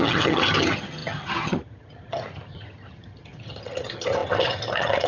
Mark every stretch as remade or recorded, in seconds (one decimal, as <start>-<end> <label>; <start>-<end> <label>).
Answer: 0.0-5.1 remade